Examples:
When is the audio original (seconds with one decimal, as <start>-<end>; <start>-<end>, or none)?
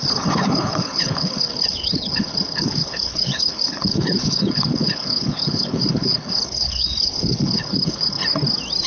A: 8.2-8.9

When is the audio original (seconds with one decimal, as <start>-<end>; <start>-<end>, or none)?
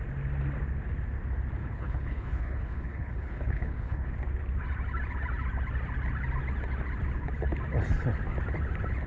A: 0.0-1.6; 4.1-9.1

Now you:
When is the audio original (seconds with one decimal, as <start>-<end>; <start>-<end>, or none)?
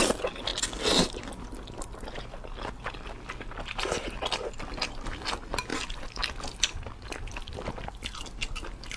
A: 0.0-9.0